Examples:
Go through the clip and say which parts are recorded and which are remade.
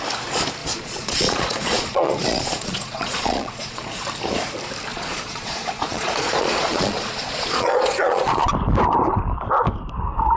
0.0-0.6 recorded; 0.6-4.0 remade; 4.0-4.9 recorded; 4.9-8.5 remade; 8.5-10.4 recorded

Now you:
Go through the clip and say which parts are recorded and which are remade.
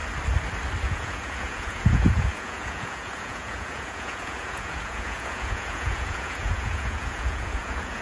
0.0-0.8 recorded; 0.8-8.0 remade